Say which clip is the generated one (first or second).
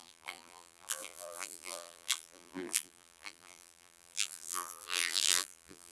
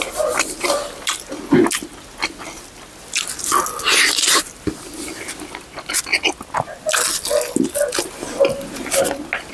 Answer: first